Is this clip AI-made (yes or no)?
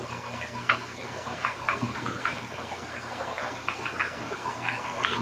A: yes